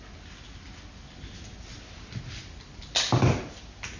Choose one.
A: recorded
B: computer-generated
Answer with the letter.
A